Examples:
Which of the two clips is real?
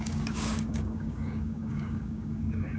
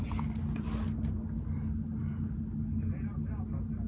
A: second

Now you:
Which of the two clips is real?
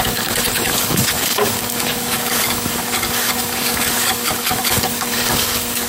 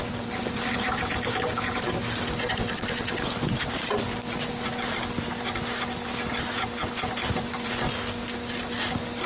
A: second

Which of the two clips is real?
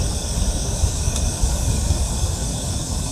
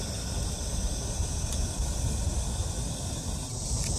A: second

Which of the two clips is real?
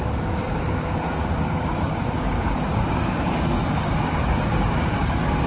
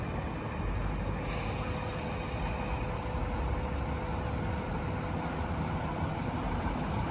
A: second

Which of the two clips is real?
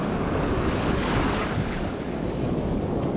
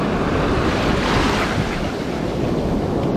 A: second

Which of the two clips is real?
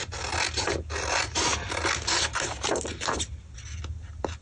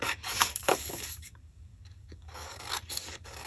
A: first